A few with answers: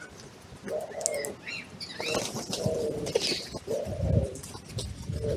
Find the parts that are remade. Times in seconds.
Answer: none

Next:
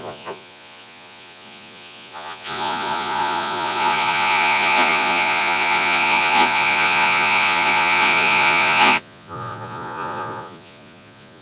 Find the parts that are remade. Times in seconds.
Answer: 0.0-11.4 (vocoder, Vocos)

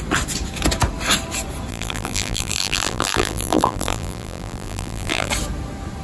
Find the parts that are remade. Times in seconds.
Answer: 1.7-5.3 (vocoder, BigVGAN v2)

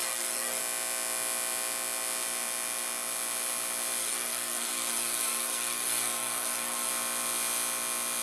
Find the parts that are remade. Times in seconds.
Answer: 0.0-0.6 (codec, SNAC); 4.0-6.9